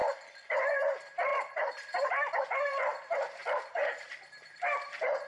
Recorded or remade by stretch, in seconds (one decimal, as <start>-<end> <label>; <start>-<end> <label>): 0.0-0.7 recorded; 0.7-5.3 remade